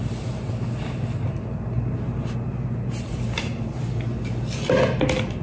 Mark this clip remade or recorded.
recorded